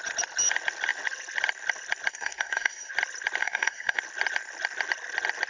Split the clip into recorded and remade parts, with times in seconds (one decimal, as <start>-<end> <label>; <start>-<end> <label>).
0.0-2.1 recorded; 2.1-2.9 remade; 2.9-3.4 recorded; 3.4-4.0 remade; 4.0-5.5 recorded